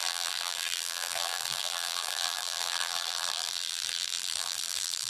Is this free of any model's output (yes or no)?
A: no